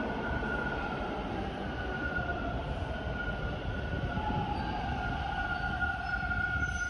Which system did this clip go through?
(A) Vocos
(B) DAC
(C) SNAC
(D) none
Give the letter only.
D